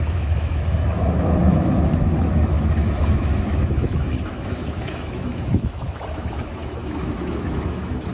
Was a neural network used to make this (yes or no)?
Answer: yes